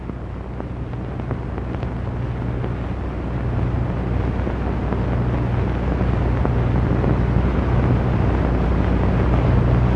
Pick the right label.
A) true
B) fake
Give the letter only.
A